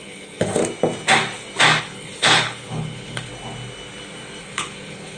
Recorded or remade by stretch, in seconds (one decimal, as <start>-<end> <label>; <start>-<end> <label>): 0.0-0.6 remade; 0.6-1.8 recorded; 1.8-3.3 remade; 3.3-4.4 recorded; 4.4-5.2 remade